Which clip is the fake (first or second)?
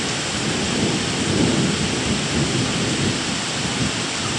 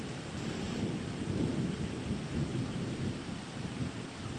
second